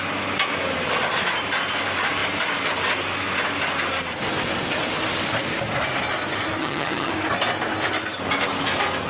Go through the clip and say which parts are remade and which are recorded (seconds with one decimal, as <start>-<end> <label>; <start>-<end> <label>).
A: 0.0-6.6 recorded; 6.6-7.1 remade; 7.1-9.1 recorded